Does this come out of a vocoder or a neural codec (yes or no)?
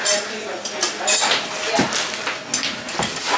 no